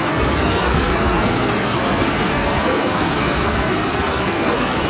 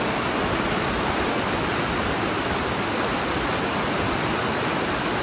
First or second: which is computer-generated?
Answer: first